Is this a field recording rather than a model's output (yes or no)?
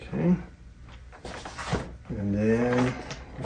yes